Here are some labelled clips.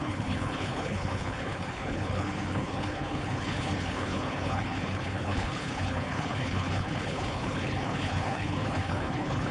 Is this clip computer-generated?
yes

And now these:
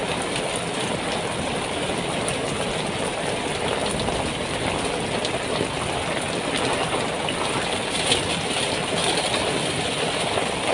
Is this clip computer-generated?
no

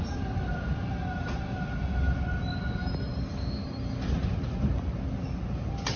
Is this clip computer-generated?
no